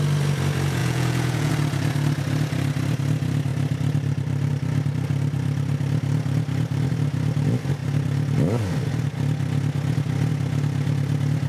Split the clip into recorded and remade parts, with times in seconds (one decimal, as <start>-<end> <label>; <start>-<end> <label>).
0.0-0.8 recorded; 0.8-1.5 remade; 1.5-11.5 recorded